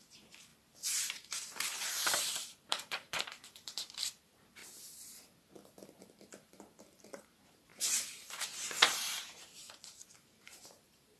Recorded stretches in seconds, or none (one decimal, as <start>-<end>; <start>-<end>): 4.6-6.0